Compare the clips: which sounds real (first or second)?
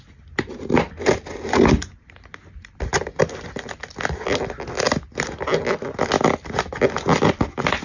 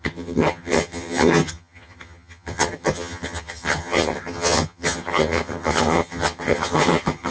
first